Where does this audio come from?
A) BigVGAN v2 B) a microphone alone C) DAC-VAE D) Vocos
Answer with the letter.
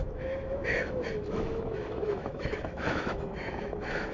C